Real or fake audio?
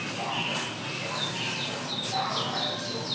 real